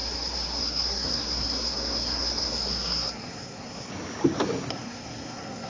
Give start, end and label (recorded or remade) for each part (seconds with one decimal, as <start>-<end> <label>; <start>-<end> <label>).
0.0-3.9 remade; 3.9-4.7 recorded; 4.7-5.7 remade